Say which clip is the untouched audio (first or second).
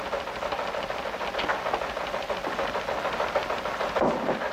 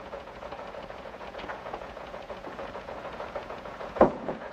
first